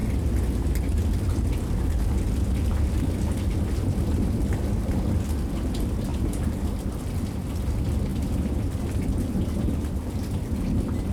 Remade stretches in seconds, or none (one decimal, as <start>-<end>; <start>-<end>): 8.1-9.7